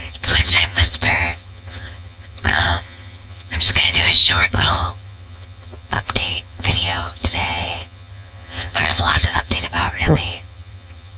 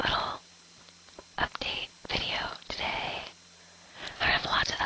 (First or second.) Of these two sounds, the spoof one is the first